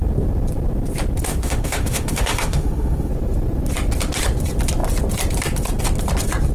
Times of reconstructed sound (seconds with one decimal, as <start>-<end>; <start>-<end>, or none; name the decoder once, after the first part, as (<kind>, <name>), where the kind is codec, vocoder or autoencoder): 1.3-3.1 (autoencoder, DAC-VAE)